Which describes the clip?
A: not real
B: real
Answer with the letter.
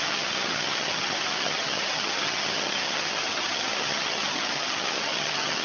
A